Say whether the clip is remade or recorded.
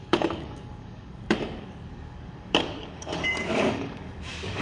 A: remade